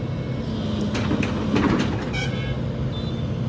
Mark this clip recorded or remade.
recorded